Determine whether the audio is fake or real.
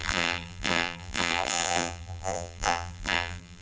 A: fake